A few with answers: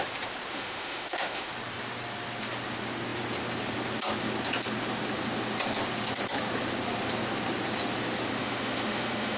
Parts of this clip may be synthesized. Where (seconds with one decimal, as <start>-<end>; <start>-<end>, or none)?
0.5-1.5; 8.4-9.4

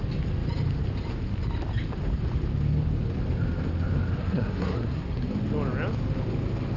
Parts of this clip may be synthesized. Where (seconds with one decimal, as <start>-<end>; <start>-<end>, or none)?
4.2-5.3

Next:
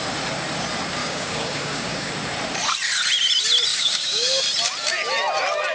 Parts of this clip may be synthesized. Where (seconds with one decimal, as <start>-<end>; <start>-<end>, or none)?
1.0-2.1; 3.7-4.4

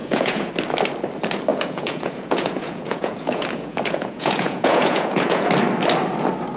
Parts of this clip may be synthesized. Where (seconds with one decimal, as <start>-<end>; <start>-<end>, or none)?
0.0-0.5; 1.5-5.5

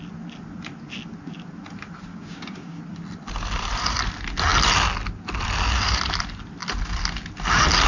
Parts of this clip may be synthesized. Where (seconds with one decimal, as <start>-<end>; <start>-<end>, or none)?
2.1-2.8